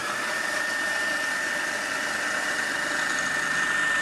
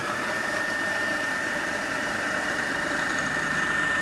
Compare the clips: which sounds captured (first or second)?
first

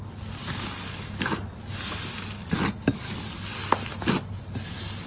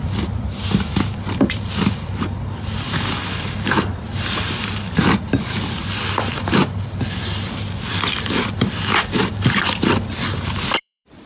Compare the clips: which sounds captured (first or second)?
first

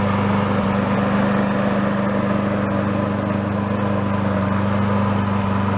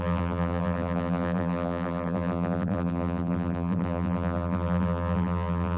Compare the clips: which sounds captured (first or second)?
first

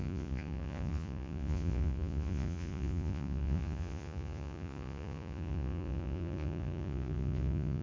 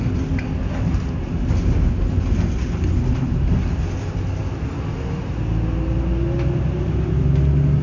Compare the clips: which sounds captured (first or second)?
second